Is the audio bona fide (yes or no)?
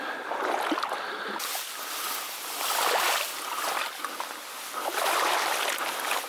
yes